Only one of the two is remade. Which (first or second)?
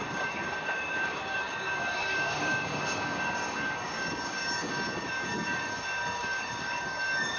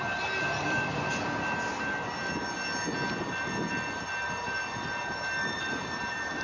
first